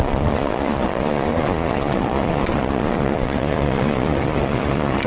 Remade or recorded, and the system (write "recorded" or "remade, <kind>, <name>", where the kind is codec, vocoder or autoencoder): remade, vocoder, Vocos